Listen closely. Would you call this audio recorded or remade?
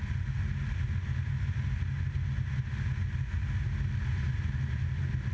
recorded